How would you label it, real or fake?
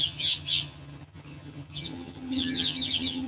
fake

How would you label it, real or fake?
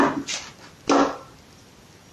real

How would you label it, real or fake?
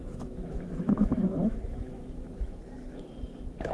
fake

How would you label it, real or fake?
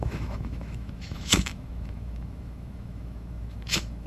fake